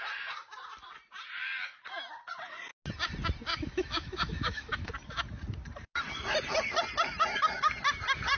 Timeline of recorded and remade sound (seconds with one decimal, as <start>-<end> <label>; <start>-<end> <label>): 0.0-3.5 recorded; 3.5-4.9 remade; 4.9-8.4 recorded